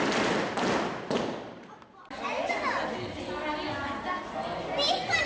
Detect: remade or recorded recorded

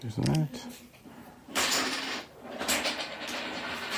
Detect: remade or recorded remade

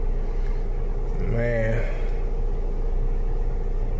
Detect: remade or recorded recorded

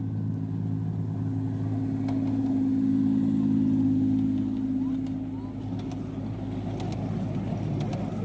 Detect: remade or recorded recorded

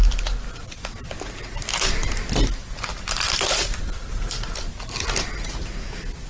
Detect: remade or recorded recorded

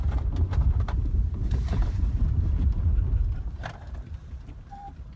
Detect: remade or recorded remade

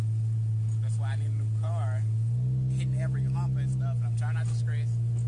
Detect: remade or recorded recorded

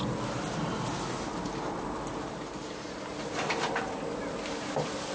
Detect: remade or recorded recorded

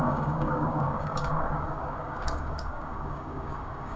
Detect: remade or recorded remade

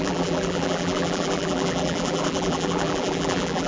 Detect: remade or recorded remade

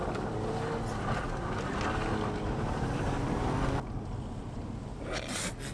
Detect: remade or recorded recorded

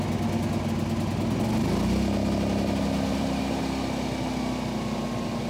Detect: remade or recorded recorded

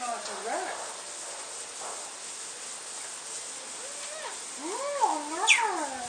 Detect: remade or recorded recorded